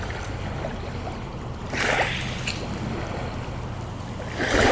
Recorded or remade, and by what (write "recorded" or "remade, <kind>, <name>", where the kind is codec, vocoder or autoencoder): recorded